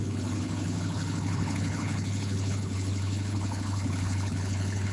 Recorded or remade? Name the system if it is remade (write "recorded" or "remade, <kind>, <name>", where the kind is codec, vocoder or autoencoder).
remade, codec, HILCodec